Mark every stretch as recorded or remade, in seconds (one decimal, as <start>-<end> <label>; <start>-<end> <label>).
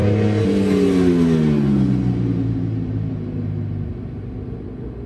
0.0-5.1 recorded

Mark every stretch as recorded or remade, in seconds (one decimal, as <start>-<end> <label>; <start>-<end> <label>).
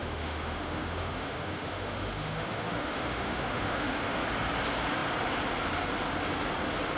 0.0-4.2 remade; 4.2-7.0 recorded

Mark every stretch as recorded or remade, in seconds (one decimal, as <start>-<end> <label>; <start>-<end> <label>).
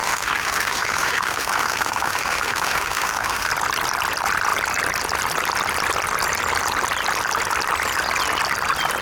0.0-3.5 remade; 3.5-9.0 recorded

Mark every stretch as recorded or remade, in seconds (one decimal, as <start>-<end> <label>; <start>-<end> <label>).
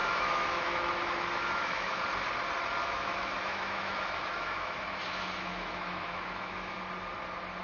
0.0-2.0 remade; 2.0-2.8 recorded; 2.8-6.8 remade; 6.8-7.6 recorded